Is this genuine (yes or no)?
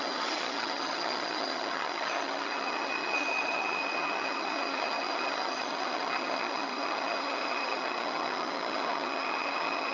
no